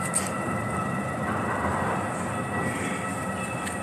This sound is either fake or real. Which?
real